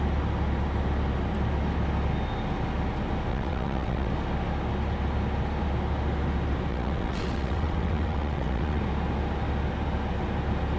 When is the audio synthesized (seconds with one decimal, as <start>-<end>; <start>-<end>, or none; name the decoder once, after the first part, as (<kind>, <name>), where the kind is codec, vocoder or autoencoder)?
3.3-4.1 (vocoder, WaveNeXt); 6.7-8.8